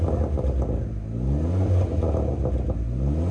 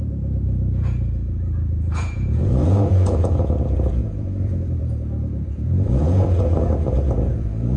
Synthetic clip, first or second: second